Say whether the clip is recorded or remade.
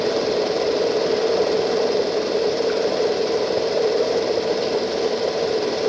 recorded